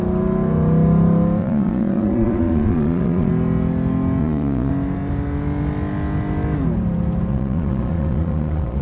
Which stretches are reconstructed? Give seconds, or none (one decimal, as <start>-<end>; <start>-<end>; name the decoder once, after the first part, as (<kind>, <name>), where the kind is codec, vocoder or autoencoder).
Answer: 1.4-3.3 (vocoder, Vocos); 4.2-4.7; 7.3-8.8